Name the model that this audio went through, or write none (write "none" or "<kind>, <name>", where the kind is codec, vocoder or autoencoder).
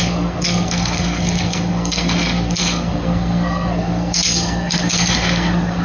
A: codec, SNAC